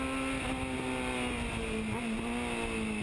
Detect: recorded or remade recorded